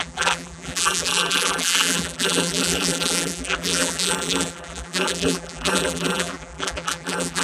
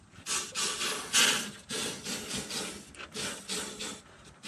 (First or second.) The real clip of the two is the second